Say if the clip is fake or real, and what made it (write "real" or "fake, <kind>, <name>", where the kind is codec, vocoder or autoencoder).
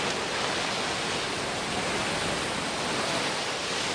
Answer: real